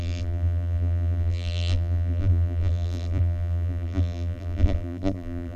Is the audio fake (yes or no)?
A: yes